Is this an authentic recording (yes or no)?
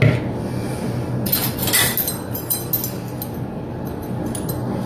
yes